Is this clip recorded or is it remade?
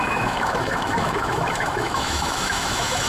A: remade